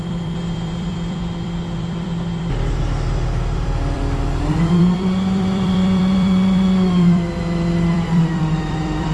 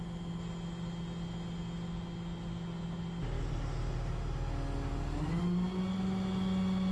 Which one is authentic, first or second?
second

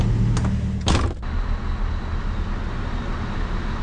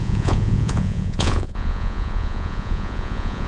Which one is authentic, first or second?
first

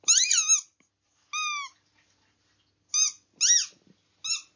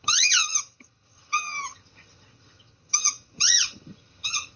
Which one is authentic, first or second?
first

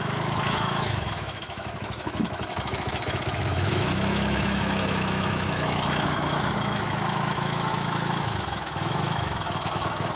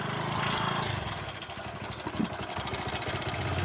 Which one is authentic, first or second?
second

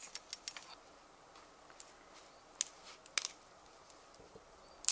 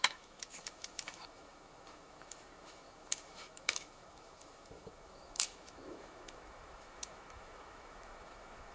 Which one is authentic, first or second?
first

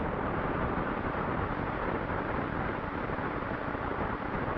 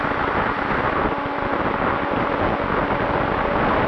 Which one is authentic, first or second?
second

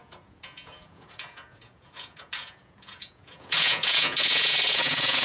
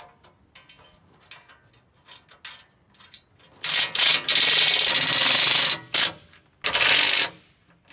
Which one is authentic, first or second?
second